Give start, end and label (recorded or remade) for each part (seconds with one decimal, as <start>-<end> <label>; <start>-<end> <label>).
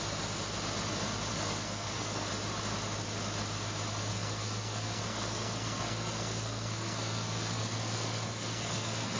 0.0-1.3 recorded; 1.3-2.3 remade; 2.3-4.1 recorded; 4.1-9.2 remade